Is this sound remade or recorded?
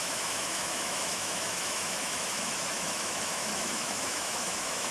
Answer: remade